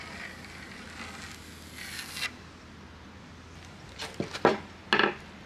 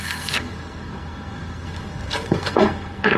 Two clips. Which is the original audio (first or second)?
first